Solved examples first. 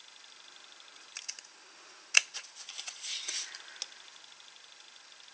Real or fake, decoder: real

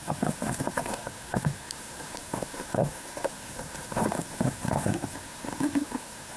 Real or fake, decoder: fake, codec, SNAC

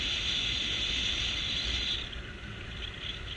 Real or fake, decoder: real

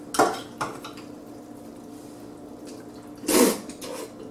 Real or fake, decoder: real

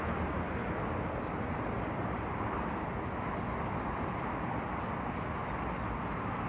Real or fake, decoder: real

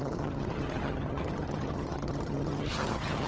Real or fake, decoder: fake, vocoder, HiFi-GAN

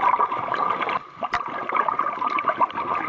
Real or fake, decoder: fake, vocoder, BigVGAN v2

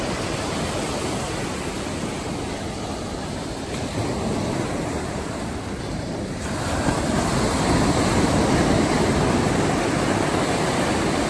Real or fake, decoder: fake, vocoder, BigVGAN v2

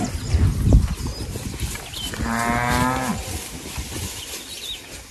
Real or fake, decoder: real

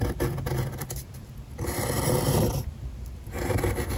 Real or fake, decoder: fake, vocoder, BigVGAN v2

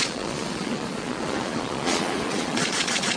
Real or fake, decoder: fake, vocoder, Vocos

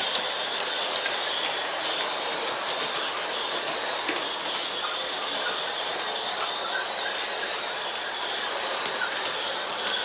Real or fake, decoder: real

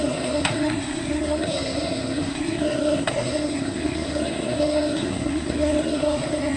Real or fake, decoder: fake, codec, SNAC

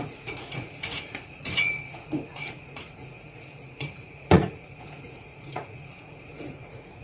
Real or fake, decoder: fake, vocoder, Vocos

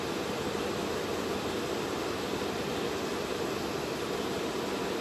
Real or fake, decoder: real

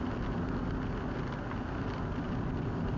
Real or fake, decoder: real